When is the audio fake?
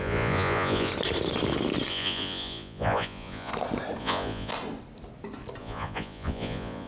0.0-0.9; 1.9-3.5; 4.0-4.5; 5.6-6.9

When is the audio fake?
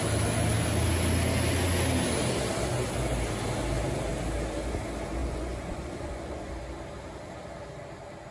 5.2-6.6